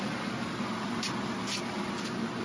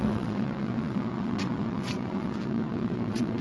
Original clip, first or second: first